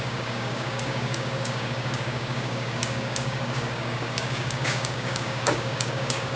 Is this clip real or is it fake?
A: fake